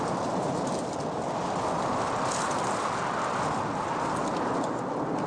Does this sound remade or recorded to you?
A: recorded